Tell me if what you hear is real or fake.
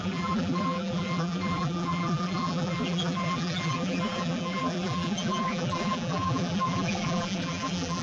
fake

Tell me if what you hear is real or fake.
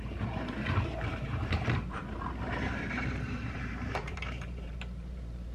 fake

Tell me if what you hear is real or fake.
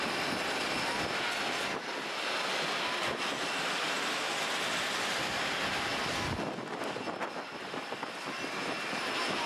real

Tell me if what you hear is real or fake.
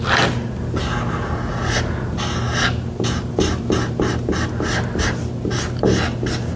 real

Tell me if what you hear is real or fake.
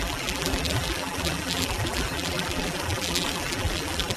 fake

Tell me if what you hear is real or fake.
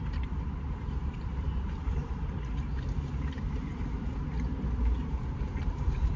fake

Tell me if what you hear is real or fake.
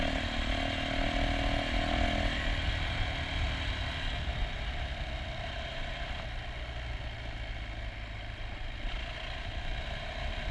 real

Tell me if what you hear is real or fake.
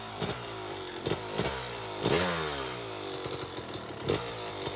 real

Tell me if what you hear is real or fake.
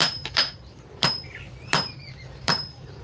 fake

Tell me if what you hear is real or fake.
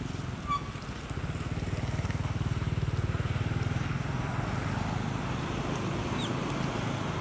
real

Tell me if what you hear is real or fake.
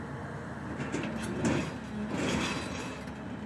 real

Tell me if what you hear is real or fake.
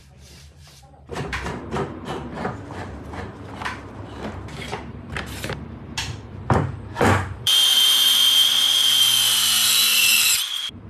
fake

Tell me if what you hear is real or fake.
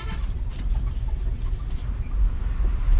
fake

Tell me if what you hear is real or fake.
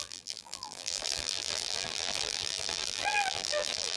fake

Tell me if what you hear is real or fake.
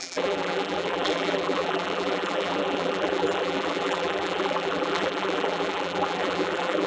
fake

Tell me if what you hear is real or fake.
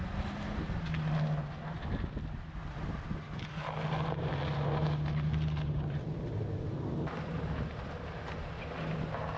real